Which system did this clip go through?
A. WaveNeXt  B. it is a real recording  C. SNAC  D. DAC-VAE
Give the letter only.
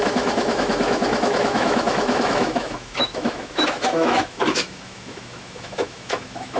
D